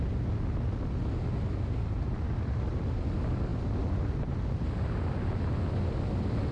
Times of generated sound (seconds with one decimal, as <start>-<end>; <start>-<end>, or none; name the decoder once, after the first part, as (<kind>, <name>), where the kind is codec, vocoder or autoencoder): none